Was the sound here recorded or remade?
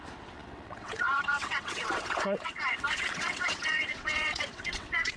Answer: remade